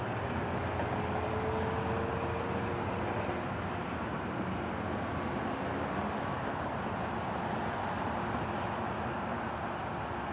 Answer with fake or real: real